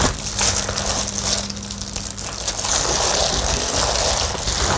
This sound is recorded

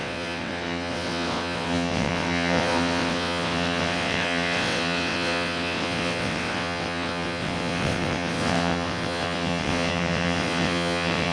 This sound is remade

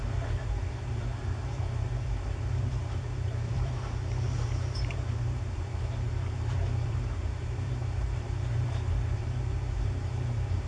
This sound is remade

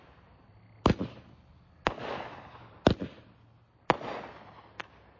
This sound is recorded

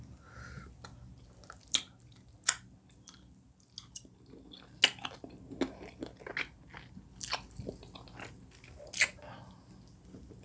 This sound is recorded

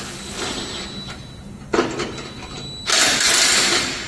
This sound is recorded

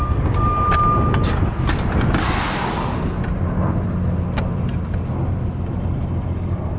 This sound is recorded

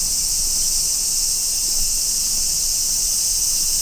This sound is recorded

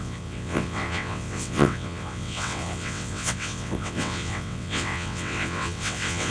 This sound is remade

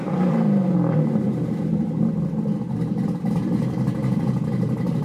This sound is remade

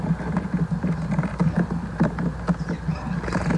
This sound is recorded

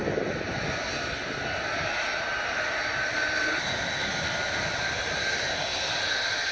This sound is recorded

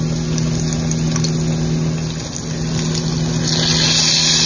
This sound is recorded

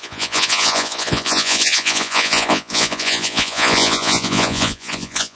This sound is remade